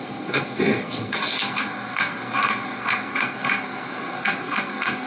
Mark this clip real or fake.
fake